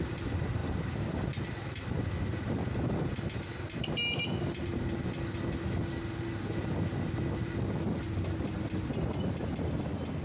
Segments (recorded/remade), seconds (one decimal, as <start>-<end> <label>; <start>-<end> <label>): 0.0-10.2 recorded